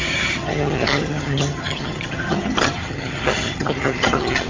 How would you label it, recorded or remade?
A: remade